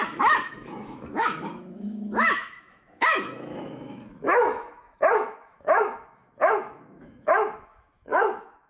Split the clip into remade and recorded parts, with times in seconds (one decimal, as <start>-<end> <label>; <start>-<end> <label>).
0.0-8.7 remade